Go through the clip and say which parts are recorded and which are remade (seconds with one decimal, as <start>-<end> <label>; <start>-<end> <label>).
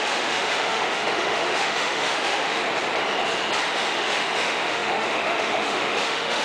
0.0-2.6 remade; 2.6-3.7 recorded; 3.7-6.4 remade